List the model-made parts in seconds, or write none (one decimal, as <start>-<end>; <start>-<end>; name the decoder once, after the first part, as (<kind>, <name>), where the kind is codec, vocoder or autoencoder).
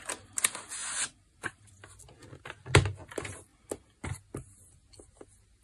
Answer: 0.8-2.4 (vocoder, BigVGAN v2)